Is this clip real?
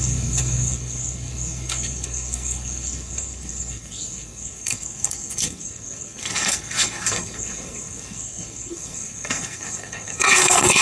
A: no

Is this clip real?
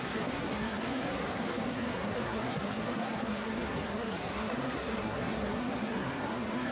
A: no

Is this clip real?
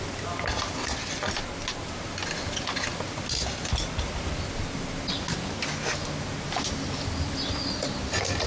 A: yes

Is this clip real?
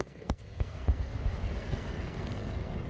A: no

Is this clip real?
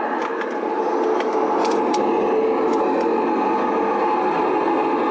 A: yes